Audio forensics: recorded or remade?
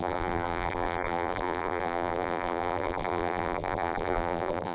remade